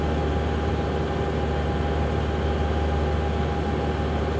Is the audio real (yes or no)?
yes